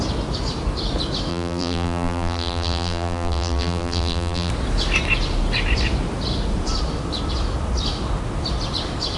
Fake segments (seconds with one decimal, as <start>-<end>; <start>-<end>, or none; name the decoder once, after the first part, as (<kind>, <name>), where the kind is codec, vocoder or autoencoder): 1.3-4.5 (vocoder, BigVGAN v2)